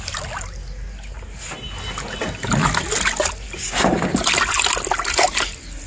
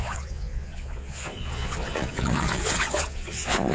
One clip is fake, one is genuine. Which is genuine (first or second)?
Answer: first